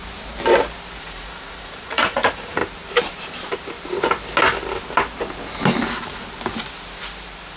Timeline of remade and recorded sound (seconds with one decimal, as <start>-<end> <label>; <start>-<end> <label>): 0.0-1.0 recorded; 1.0-2.6 remade; 2.6-7.6 recorded

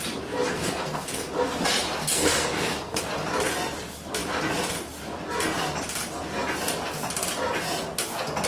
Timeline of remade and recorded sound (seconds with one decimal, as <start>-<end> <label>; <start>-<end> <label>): 0.0-0.5 recorded; 0.5-1.3 remade; 1.3-2.0 recorded; 2.0-3.0 remade; 3.0-8.5 recorded

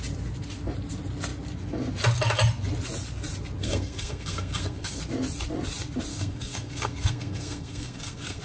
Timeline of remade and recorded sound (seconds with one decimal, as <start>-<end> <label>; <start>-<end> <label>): 0.0-3.6 recorded; 3.6-5.0 remade; 5.0-6.1 recorded; 6.1-8.4 remade